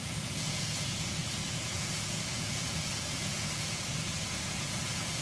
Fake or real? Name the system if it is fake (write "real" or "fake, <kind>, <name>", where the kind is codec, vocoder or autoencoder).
fake, vocoder, Vocos